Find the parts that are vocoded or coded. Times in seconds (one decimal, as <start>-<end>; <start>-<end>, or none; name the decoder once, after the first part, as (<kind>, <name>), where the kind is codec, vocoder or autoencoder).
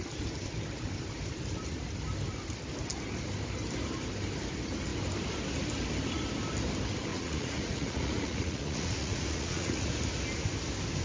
7.1-9.9 (vocoder, Vocos)